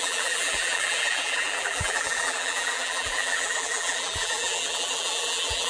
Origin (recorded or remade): remade